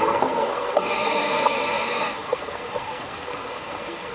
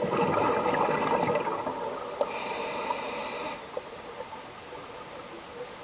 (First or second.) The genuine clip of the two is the second